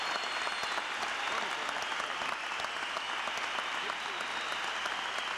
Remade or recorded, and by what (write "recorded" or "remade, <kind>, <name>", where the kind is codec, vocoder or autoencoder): recorded